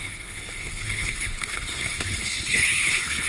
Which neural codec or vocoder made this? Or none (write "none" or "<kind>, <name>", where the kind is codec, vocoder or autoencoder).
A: codec, HILCodec